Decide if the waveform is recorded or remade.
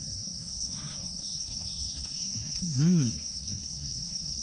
remade